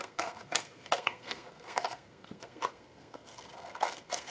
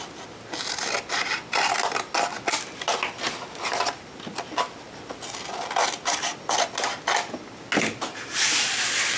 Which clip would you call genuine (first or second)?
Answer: second